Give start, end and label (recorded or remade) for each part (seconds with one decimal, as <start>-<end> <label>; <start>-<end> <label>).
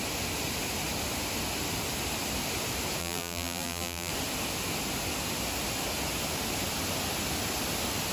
0.0-3.0 recorded; 3.0-4.1 remade; 4.1-8.1 recorded